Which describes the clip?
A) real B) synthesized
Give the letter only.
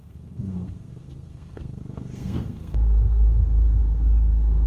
B